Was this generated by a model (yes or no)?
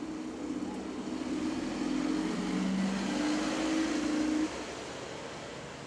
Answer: no